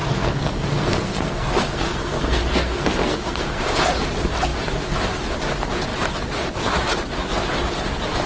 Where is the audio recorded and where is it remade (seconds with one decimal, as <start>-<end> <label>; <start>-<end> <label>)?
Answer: 0.0-3.6 remade; 3.6-8.3 recorded